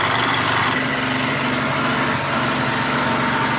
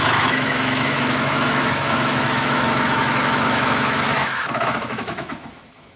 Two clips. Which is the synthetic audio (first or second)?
second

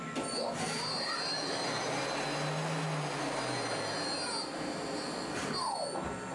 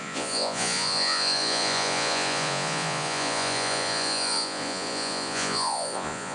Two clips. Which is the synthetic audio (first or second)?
second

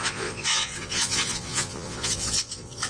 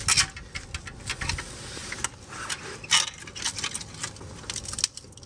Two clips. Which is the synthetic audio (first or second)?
first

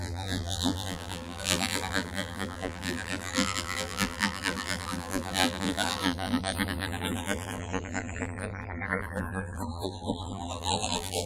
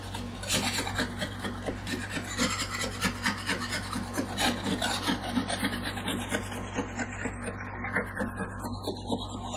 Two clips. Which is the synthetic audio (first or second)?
first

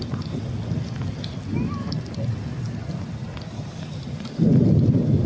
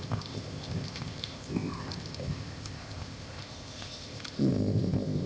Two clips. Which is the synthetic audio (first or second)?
second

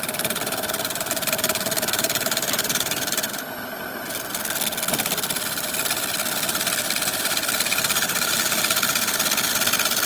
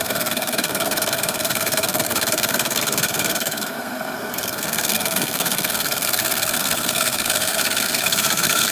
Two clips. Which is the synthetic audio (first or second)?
second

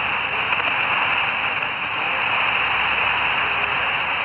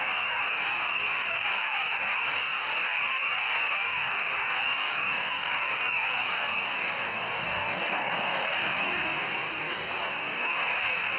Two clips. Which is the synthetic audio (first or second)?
second